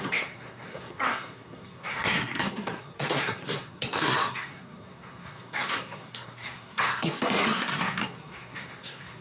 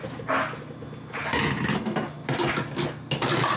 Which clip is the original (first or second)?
second